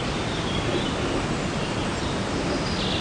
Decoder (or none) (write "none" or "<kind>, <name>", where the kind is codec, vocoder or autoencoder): none